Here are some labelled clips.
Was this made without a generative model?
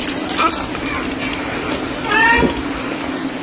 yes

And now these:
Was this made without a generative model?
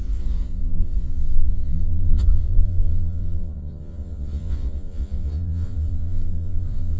no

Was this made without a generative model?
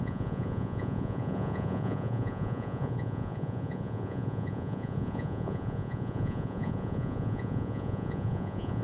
no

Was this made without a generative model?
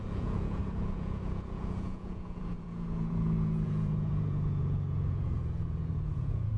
no